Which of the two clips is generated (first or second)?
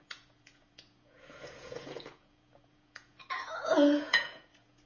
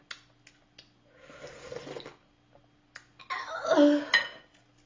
first